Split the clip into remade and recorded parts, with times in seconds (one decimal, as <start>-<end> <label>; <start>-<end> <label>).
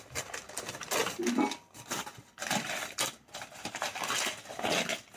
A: 0.0-5.2 recorded